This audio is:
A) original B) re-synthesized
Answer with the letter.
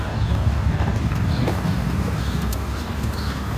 B